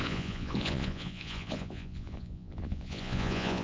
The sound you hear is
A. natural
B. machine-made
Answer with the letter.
B